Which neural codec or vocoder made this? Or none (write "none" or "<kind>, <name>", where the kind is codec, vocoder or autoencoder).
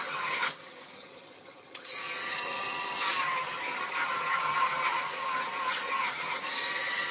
vocoder, HiFi-GAN